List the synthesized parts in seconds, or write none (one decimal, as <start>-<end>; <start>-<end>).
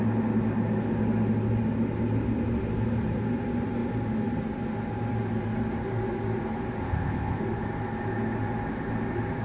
6.8-7.4